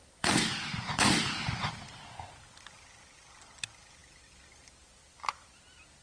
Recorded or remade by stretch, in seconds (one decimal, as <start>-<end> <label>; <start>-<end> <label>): 0.0-1.7 remade; 1.7-4.0 recorded; 4.0-5.6 remade; 5.6-6.0 recorded